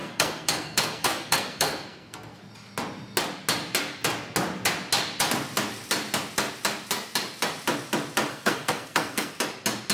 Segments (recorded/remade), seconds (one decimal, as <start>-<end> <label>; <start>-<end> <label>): 0.0-2.5 remade; 2.5-8.3 recorded; 8.3-9.3 remade; 9.3-9.9 recorded